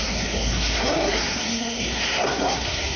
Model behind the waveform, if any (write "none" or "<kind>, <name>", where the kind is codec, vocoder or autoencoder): codec, SNAC